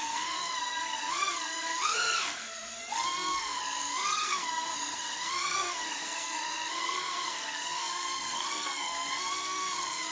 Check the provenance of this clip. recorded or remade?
remade